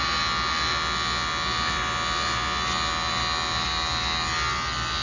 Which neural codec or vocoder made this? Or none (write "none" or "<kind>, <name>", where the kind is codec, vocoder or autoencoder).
none